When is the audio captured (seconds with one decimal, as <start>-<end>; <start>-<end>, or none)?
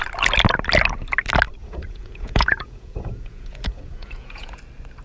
0.0-1.6; 4.6-5.0